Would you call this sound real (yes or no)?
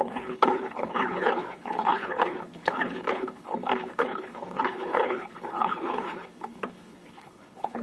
no